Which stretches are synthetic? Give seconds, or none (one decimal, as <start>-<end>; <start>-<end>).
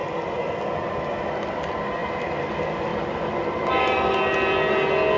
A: 2.0-2.5; 2.9-4.1